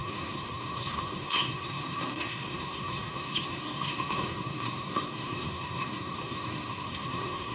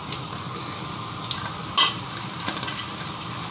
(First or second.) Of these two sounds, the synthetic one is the first